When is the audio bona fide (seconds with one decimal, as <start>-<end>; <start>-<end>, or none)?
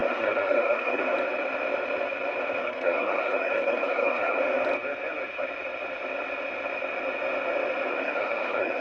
1.0-2.6; 4.4-7.9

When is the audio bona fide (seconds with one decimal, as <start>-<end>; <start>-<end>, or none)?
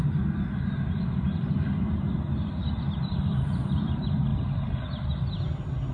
0.0-5.9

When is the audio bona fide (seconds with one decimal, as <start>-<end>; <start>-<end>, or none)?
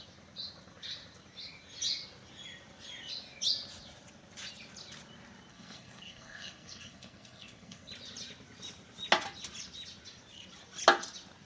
0.0-5.5; 7.9-11.4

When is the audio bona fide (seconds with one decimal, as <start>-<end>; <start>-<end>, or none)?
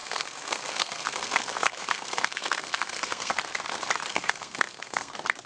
3.3-4.1; 5.1-5.5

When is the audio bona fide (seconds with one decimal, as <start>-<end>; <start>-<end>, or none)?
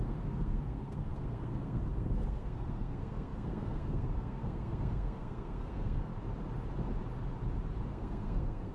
6.1-7.9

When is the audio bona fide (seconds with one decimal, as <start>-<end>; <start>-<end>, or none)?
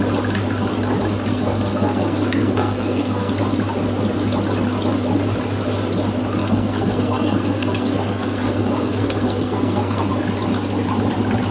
0.0-1.3; 3.3-6.4; 10.1-11.5